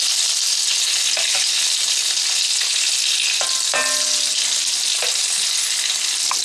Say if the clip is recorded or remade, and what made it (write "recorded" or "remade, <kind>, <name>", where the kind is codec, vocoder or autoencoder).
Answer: recorded